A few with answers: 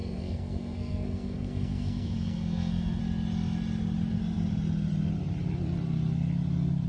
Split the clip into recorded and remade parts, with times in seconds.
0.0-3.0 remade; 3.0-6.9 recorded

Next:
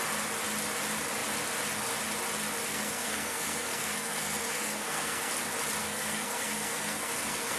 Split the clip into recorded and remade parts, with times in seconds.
0.0-2.7 recorded; 2.7-5.3 remade; 5.3-5.8 recorded; 5.8-7.6 remade

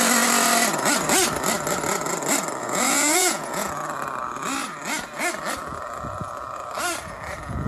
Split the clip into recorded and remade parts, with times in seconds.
0.0-2.6 recorded; 2.6-3.7 remade; 3.7-7.7 recorded

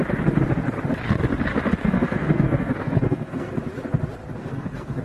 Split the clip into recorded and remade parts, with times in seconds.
0.0-1.8 recorded; 1.8-3.5 remade; 3.5-4.4 recorded; 4.4-5.0 remade

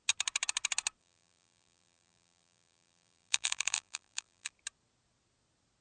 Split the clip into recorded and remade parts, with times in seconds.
0.0-1.0 recorded; 1.0-4.5 remade; 4.5-5.8 recorded